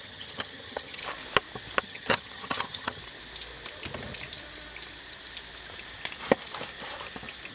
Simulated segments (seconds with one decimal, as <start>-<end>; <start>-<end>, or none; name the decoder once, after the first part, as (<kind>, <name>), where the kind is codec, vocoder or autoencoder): 0.0-1.0 (vocoder, HiFi-GAN); 1.8-3.0